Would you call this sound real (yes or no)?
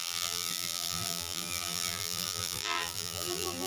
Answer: no